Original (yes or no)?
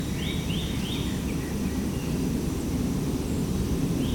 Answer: yes